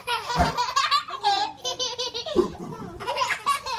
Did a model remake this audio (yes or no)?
no